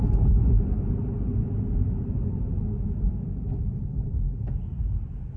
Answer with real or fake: real